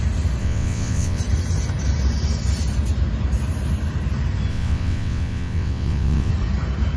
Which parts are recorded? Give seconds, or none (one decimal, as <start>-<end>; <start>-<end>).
0.0-0.4; 1.2-4.5; 6.3-7.0